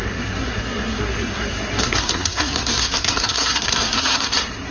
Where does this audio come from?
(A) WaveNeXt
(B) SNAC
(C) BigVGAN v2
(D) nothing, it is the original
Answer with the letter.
B